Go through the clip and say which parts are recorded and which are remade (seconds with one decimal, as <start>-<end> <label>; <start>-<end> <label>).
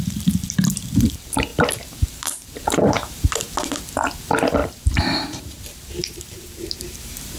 0.0-1.5 recorded; 1.5-3.7 remade; 3.7-4.6 recorded; 4.6-5.6 remade; 5.6-6.0 recorded; 6.0-7.4 remade